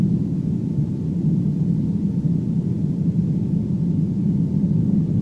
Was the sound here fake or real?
real